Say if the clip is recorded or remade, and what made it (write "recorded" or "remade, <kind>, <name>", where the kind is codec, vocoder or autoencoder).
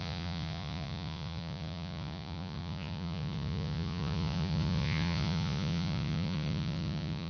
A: remade, vocoder, Vocos